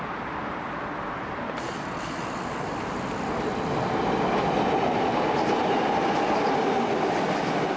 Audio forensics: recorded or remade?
recorded